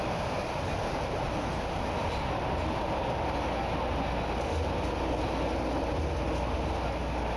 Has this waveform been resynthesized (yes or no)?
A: no